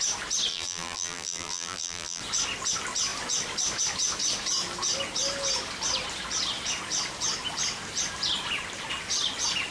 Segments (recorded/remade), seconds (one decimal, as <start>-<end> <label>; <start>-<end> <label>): 0.0-0.5 recorded; 0.5-2.2 remade; 2.2-9.7 recorded